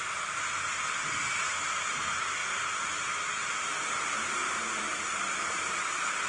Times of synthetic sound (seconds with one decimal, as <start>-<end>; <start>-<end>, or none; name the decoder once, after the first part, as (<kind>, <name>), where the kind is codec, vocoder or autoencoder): 2.4-2.9 (vocoder, BigVGAN v2)